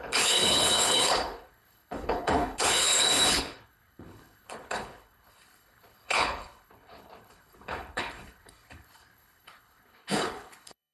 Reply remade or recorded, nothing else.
remade